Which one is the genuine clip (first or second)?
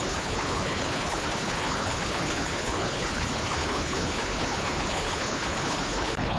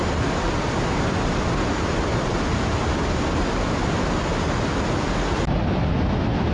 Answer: second